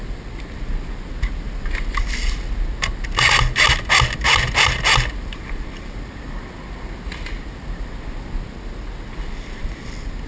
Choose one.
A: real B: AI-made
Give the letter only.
A